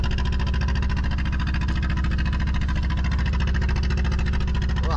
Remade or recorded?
recorded